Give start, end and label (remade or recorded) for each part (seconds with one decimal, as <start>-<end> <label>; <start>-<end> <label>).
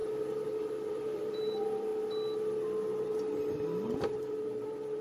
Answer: 0.0-0.9 recorded; 0.9-1.9 remade; 1.9-4.1 recorded; 4.1-5.0 remade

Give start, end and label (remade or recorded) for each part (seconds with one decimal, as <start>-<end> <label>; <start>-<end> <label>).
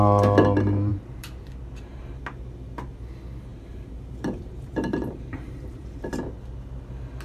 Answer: 0.0-0.9 recorded; 0.9-2.0 remade; 2.0-3.5 recorded; 3.5-6.2 remade; 6.2-7.2 recorded